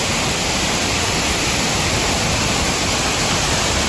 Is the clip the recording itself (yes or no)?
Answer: yes